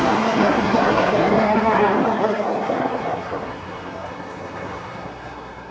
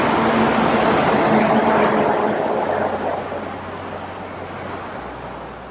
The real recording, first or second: second